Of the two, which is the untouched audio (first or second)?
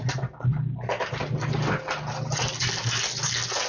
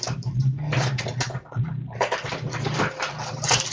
first